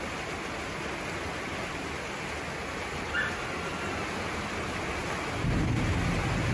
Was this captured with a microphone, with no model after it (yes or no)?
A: yes